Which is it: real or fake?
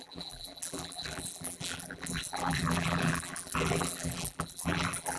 fake